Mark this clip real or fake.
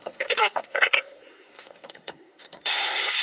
fake